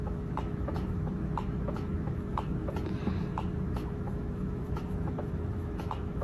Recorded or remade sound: remade